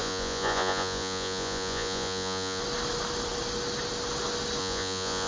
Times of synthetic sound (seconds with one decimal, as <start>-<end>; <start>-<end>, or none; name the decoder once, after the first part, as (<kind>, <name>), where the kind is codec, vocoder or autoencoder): 0.0-2.6 (vocoder, Vocos); 4.6-5.3